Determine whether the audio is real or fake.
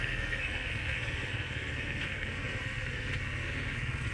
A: fake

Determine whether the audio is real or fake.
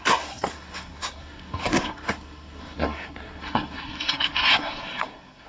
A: fake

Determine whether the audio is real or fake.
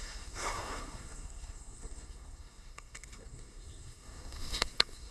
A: fake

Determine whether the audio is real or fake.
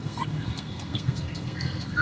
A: fake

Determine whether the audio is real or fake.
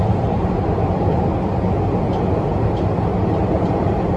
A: real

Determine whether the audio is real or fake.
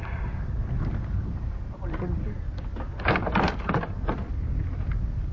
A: real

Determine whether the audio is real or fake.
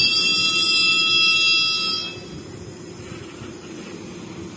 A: real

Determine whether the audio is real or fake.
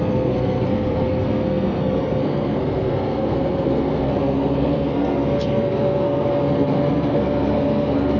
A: fake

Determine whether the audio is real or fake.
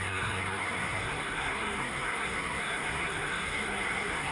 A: fake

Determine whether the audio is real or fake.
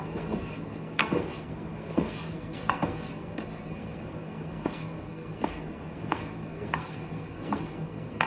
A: fake